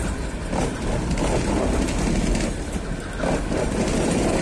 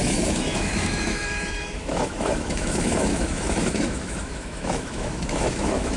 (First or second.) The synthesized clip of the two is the second